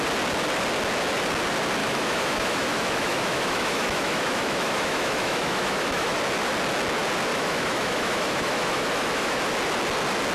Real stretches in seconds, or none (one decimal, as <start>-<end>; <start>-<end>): 0.0-1.8; 6.2-7.3; 9.4-10.3